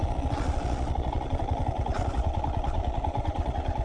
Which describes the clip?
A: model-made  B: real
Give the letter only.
A